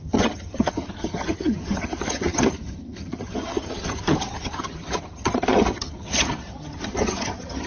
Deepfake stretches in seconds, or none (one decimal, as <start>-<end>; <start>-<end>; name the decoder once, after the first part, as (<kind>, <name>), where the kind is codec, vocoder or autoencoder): 0.0-7.7 (vocoder, HiFi-GAN)

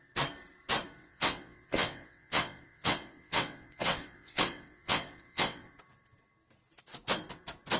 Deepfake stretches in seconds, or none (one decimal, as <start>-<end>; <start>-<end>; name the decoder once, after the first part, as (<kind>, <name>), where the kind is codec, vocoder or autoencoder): 1.0-5.7 (vocoder, WaveNeXt)

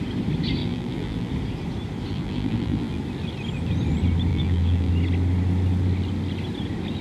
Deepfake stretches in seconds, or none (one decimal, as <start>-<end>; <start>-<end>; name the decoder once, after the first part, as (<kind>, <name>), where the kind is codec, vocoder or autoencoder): 0.6-1.3 (vocoder, BigVGAN v2); 2.1-3.0; 4.3-4.9

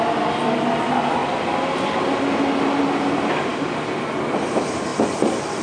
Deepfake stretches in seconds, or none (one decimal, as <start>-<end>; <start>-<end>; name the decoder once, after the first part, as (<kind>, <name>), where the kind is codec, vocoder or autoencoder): none

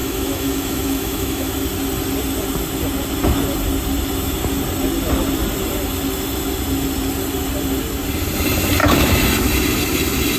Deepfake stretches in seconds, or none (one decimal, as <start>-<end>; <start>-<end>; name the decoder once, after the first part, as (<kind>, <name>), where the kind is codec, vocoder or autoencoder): 0.0-1.5 (autoencoder, DAC-VAE); 8.8-9.3

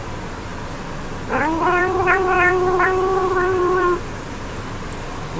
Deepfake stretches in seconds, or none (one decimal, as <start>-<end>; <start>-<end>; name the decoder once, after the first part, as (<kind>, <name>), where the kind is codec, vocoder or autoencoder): 0.0-0.5 (vocoder, BigVGAN v2); 1.3-5.4

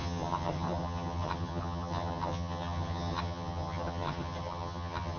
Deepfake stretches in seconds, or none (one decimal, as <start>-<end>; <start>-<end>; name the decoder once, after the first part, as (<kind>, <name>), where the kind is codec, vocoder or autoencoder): 0.0-5.2 (vocoder, HiFi-GAN)